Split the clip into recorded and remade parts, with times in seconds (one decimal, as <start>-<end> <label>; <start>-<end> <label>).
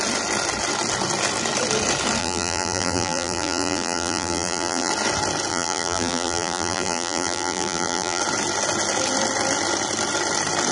0.0-2.2 recorded; 2.2-4.9 remade; 4.9-5.5 recorded; 5.5-8.2 remade; 8.2-10.7 recorded